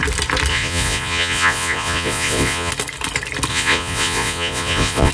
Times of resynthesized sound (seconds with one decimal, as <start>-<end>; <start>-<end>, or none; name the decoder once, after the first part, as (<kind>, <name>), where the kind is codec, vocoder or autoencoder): 0.5-2.7 (vocoder, Vocos); 3.5-5.1